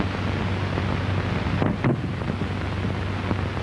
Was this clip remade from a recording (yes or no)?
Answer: no